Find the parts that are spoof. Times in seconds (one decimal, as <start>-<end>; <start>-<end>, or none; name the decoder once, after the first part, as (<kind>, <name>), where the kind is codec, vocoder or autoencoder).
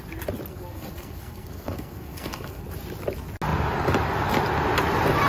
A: 0.5-2.6 (codec, SNAC)